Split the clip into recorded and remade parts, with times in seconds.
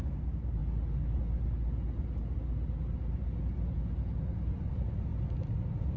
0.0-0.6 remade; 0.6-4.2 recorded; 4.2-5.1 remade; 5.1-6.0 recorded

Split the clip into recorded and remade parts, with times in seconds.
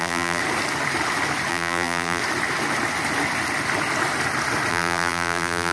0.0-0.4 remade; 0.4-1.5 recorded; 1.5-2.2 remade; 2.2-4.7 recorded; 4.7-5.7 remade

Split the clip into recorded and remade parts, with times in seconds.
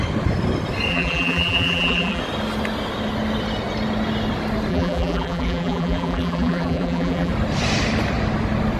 0.0-0.9 recorded; 0.9-2.2 remade; 2.2-4.7 recorded; 4.7-7.3 remade; 7.3-8.8 recorded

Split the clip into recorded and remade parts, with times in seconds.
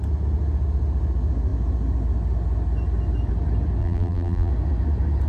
0.0-3.8 recorded; 3.8-4.5 remade; 4.5-5.3 recorded